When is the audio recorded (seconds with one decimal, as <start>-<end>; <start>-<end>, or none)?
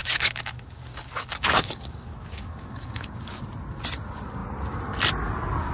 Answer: 3.4-5.7